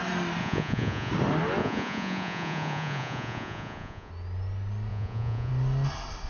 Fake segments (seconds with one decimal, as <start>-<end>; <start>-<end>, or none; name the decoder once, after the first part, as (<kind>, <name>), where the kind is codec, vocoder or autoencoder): 0.4-1.1 (vocoder, Vocos); 1.6-4.1; 4.9-5.5